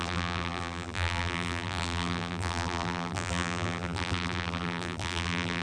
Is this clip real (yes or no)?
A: no